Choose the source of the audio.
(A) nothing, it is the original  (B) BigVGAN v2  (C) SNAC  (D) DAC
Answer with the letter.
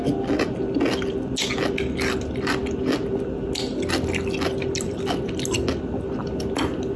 A